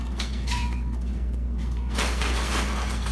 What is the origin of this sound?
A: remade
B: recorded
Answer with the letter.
A